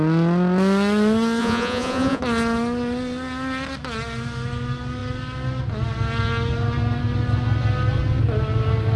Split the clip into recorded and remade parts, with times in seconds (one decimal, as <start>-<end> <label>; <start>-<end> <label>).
0.0-1.4 recorded; 1.4-2.2 remade; 2.2-9.0 recorded